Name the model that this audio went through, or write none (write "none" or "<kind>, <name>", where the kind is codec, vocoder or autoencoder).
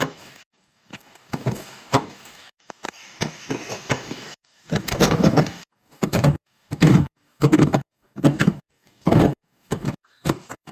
codec, DAC